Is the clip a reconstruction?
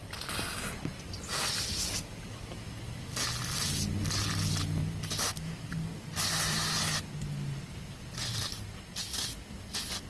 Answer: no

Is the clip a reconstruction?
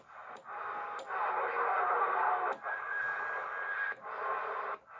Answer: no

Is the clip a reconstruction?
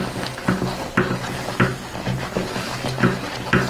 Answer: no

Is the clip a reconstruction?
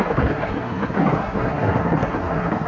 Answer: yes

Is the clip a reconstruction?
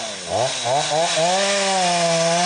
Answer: no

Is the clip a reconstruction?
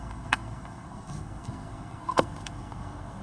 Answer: yes